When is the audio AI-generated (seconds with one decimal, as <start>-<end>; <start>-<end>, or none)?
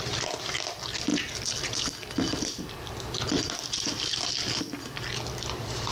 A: none